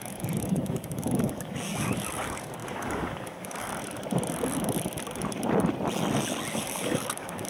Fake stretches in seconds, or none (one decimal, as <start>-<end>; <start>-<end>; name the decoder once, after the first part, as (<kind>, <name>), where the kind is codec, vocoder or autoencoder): 0.0-3.7 (codec, DAC); 6.5-7.5